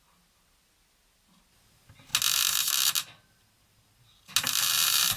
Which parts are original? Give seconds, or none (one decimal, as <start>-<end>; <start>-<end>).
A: 0.0-5.2